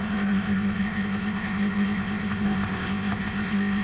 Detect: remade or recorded remade